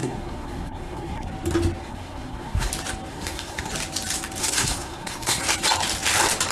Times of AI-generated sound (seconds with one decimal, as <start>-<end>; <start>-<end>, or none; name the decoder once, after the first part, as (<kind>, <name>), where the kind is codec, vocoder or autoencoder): 0.0-1.3 (codec, SNAC); 1.8-2.7; 3.1-3.7; 4.4-5.4